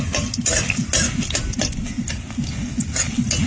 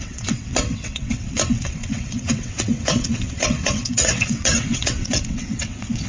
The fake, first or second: second